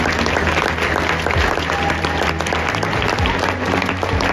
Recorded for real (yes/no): yes